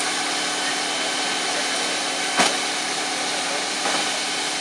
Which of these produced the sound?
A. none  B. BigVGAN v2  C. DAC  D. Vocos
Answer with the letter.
A